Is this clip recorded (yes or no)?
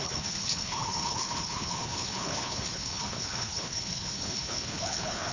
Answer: no